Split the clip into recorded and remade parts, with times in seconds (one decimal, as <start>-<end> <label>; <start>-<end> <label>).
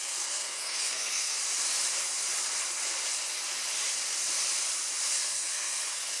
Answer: 0.0-1.4 remade; 1.4-5.1 recorded; 5.1-6.2 remade